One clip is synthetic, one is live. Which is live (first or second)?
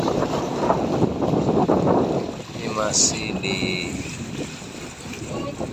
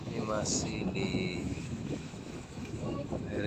first